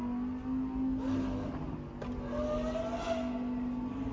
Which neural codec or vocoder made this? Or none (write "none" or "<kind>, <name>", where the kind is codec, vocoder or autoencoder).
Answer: none